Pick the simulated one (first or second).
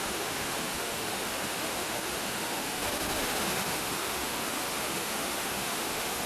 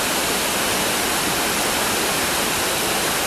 first